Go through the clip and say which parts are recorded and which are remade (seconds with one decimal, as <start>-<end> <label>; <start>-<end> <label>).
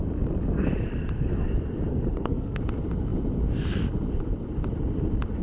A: 0.0-1.9 recorded; 1.9-2.6 remade; 2.6-5.4 recorded